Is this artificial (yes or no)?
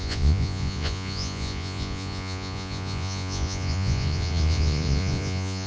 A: yes